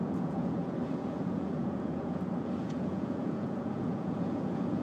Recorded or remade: remade